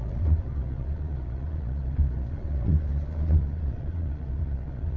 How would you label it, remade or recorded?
remade